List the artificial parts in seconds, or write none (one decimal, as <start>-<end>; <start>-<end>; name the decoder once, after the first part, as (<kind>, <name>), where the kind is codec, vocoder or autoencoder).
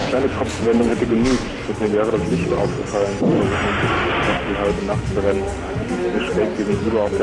0.0-0.9 (vocoder, Vocos)